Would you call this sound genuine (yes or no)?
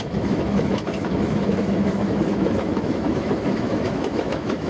no